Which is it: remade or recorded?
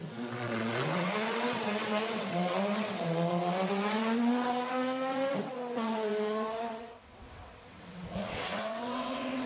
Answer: remade